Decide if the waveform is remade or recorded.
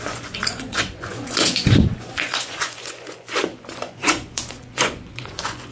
remade